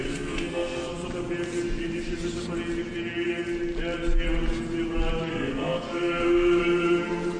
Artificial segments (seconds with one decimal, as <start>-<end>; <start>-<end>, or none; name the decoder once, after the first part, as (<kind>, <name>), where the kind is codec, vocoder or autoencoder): 0.0-0.9 (codec, SNAC); 5.3-6.6